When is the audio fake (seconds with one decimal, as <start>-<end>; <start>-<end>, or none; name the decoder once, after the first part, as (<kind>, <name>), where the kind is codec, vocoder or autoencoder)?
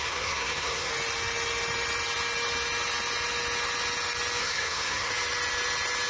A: 0.0-0.9 (codec, SNAC); 4.4-5.1